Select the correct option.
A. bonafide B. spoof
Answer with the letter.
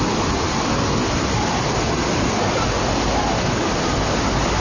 A